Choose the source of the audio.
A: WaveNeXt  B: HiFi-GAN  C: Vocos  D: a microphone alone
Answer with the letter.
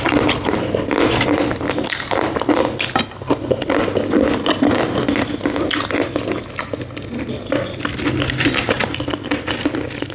D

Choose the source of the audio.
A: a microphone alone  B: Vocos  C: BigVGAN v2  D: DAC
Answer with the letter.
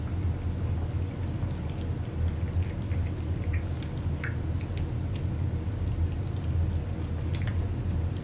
A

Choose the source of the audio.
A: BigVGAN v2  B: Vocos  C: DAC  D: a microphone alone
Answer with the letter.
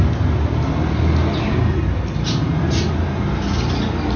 D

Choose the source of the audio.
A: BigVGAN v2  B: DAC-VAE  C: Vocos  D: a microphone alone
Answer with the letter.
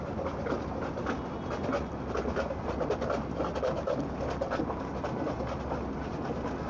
D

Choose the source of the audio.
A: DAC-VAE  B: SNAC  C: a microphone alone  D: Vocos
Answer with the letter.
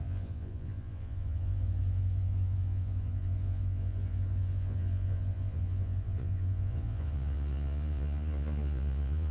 D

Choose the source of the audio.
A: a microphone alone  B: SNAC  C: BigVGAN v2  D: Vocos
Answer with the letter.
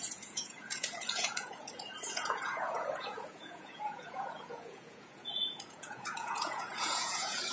D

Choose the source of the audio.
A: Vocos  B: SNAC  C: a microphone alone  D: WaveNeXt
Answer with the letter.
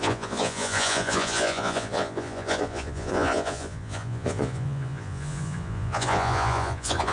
A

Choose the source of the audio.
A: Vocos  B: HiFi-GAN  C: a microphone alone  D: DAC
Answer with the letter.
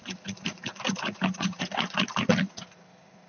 A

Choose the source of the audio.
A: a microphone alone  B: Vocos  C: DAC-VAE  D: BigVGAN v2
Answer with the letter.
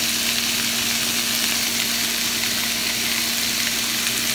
A